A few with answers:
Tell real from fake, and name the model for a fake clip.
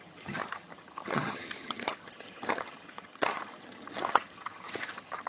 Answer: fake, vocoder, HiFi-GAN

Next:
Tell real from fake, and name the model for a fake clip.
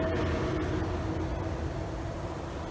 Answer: real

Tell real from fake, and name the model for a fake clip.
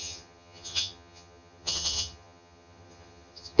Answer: fake, vocoder, HiFi-GAN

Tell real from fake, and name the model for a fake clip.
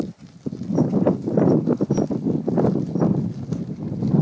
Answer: real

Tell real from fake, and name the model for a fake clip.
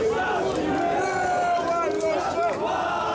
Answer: real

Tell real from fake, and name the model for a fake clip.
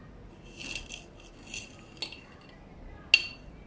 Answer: real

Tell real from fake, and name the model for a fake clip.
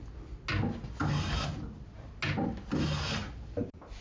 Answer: real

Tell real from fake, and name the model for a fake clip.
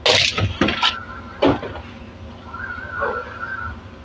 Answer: real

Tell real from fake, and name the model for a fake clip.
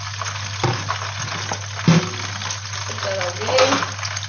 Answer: real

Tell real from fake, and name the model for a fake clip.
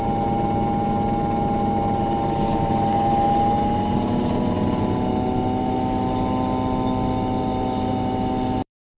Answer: real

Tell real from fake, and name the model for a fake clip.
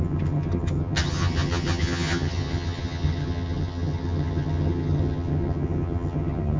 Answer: fake, vocoder, HiFi-GAN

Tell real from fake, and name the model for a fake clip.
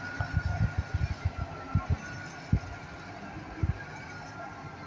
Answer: real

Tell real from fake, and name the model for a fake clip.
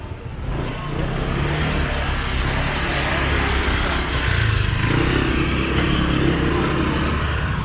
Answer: real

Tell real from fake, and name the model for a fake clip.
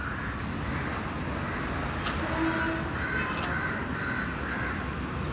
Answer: real